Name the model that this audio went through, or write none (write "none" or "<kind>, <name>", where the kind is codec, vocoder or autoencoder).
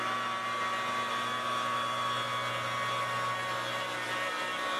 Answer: none